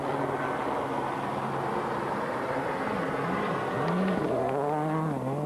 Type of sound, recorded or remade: recorded